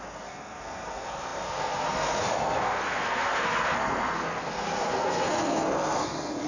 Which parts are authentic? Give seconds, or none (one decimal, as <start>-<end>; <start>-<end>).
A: none